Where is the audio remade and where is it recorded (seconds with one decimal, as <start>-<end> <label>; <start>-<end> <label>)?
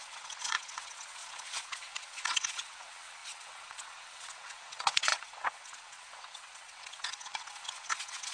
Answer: 0.0-8.3 remade